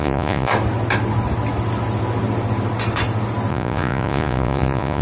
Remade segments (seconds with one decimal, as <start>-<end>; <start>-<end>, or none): 0.0-0.5; 3.5-5.0